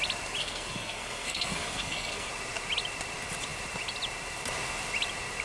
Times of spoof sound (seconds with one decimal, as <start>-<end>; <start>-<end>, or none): 0.4-2.3